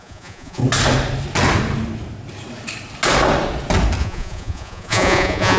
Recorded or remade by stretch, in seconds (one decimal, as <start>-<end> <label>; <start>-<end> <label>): 0.0-0.6 remade; 0.6-4.0 recorded; 4.0-5.6 remade